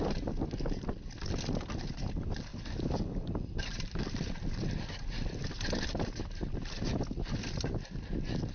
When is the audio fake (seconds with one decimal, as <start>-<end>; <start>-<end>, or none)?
none